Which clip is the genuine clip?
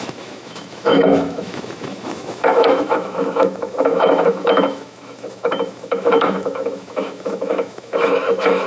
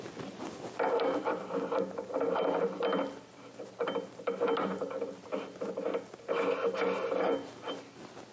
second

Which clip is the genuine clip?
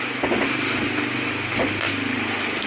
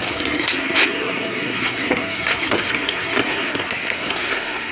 first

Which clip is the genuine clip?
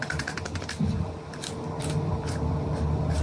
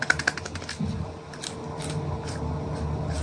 second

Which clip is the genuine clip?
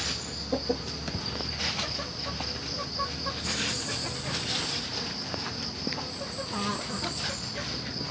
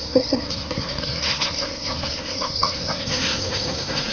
first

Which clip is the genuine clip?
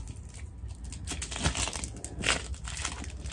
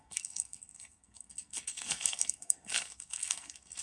first